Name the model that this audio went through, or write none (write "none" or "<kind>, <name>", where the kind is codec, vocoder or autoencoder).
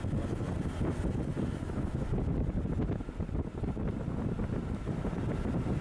none